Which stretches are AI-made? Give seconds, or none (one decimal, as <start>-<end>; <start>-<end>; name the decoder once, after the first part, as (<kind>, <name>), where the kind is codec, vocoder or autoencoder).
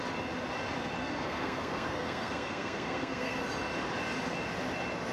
1.0-3.4 (codec, SNAC)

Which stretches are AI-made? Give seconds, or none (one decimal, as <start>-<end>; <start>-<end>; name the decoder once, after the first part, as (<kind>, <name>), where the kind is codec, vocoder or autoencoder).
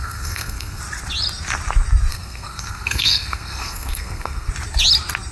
0.0-0.8 (codec, SNAC); 2.1-4.5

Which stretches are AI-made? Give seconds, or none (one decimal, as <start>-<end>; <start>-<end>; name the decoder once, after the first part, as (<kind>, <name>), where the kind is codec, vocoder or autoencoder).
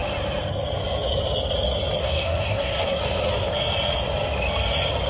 2.0-3.0 (codec, SNAC)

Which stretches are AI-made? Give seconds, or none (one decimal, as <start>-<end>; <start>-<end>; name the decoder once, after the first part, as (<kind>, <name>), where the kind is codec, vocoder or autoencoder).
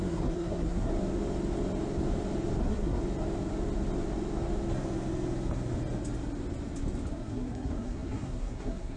0.0-0.9 (codec, SNAC); 2.6-3.0; 7.1-9.0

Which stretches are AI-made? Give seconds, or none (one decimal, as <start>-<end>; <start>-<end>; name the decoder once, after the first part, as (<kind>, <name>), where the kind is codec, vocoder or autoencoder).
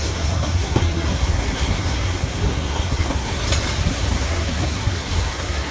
0.0-3.4 (codec, SNAC); 3.8-5.7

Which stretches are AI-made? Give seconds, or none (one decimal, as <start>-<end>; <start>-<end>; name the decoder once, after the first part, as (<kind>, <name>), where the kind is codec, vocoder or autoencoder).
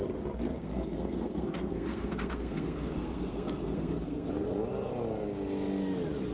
0.5-4.3 (codec, SNAC)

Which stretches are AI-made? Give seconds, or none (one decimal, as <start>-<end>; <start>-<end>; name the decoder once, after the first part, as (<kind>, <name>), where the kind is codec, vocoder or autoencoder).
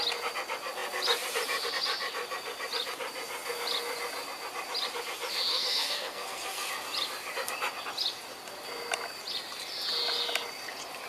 5.5-6.7 (codec, SNAC)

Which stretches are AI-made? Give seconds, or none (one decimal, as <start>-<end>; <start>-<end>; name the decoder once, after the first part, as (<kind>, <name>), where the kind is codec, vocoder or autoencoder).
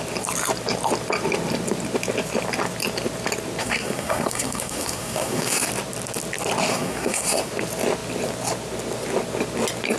3.6-5.7 (codec, SNAC); 6.7-7.5